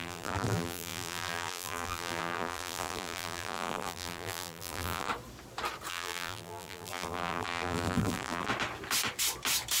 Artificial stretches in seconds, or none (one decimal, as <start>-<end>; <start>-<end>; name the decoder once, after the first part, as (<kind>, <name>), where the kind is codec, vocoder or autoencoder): 0.0-5.1 (vocoder, BigVGAN v2); 5.9-8.5